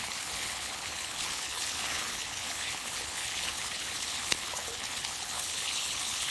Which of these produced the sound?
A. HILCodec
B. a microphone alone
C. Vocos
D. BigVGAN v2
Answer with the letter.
A